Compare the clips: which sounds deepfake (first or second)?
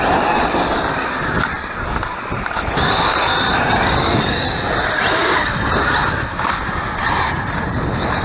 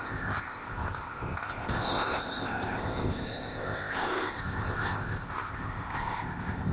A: second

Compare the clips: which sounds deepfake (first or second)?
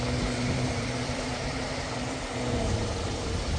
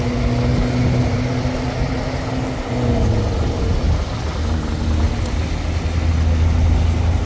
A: first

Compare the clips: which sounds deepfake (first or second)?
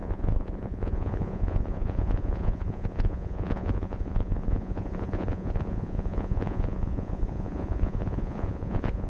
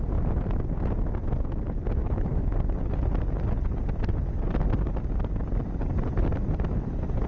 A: first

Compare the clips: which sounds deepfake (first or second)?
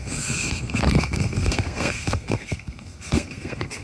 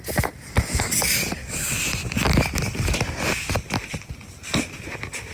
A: first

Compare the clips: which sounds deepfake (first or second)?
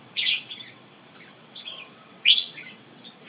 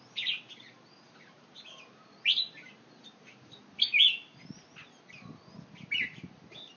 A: first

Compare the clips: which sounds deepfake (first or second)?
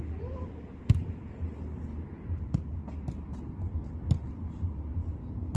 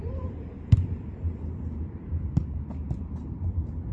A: second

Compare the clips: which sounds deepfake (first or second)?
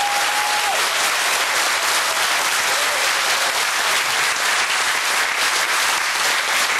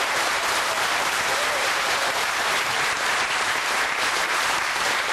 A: second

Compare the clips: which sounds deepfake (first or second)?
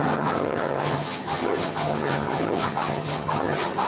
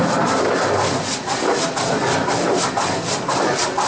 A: first